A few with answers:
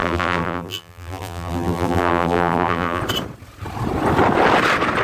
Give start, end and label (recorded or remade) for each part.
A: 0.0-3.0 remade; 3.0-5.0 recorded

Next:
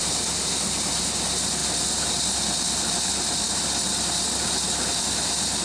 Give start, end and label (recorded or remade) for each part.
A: 0.0-5.6 recorded